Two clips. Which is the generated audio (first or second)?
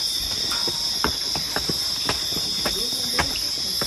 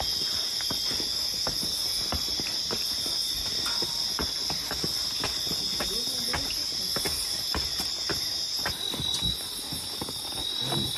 first